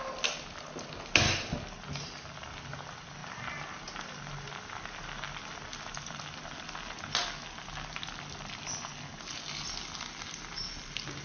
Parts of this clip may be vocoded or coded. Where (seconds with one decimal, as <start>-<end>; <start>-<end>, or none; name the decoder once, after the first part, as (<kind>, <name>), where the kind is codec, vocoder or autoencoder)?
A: none